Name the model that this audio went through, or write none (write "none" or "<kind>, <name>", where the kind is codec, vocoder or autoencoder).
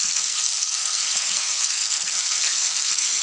codec, SNAC